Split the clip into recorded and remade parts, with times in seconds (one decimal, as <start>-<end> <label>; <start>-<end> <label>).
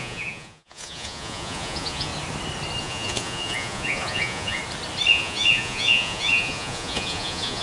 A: 0.0-2.1 remade; 2.1-2.8 recorded; 2.8-4.6 remade; 4.6-5.1 recorded; 5.1-7.6 remade